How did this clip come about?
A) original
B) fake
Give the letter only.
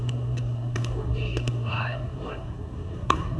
B